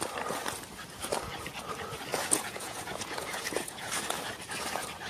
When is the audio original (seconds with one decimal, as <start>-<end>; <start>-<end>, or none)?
0.0-2.1; 4.0-5.1